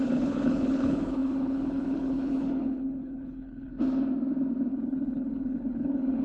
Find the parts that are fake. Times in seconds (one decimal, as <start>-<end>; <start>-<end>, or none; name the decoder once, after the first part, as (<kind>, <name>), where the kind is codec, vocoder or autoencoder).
0.0-3.7 (codec, HILCodec); 4.7-6.2